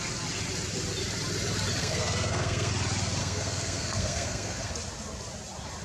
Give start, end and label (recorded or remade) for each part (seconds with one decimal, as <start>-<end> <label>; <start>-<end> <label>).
0.0-1.8 recorded; 1.8-2.7 remade; 2.7-3.2 recorded; 3.2-4.7 remade; 4.7-5.8 recorded